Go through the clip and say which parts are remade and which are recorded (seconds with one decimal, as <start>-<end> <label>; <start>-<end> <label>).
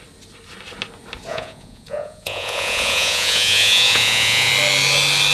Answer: 0.0-1.3 recorded; 1.3-4.5 remade; 4.5-5.3 recorded